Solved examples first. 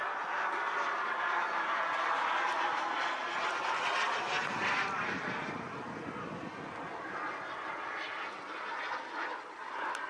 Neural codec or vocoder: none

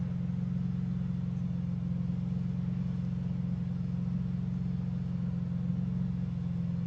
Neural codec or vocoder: none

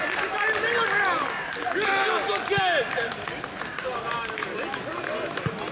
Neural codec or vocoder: none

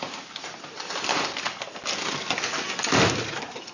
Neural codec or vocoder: none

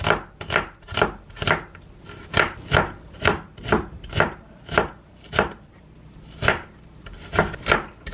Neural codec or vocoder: vocoder, BigVGAN v2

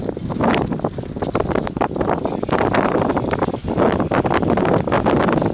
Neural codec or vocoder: none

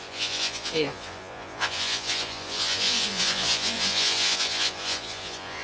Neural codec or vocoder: vocoder, Vocos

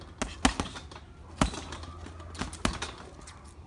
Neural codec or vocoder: none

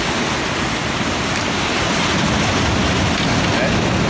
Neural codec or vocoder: none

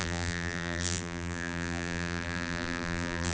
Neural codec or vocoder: vocoder, BigVGAN v2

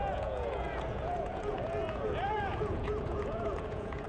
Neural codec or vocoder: vocoder, Vocos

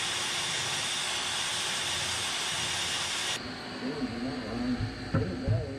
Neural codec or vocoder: none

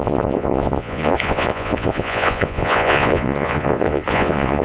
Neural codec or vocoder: vocoder, Vocos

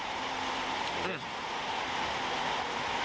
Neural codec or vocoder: none